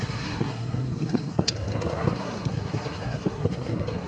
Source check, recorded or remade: remade